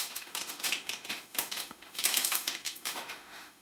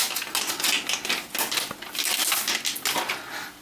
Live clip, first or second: second